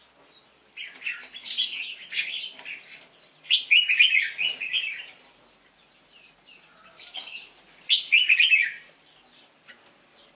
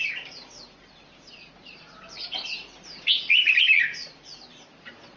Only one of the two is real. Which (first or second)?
first